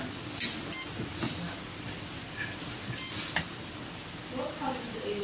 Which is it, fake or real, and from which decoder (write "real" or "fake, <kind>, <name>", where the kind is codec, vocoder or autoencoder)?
real